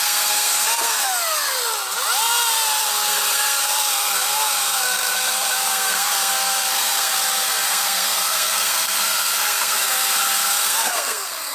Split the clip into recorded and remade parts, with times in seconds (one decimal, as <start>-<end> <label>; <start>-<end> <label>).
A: 0.0-1.0 remade; 1.0-2.8 recorded; 2.8-11.5 remade